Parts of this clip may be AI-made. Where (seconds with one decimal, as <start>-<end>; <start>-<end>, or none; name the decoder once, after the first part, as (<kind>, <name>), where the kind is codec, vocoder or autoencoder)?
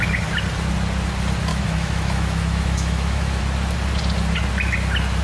1.5-3.4 (autoencoder, DAC-VAE)